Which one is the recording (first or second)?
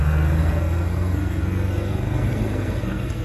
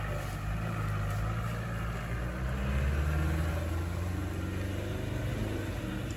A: second